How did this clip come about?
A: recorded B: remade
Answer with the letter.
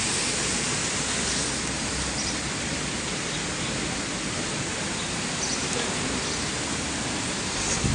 A